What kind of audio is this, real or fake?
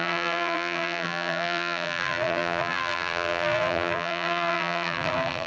fake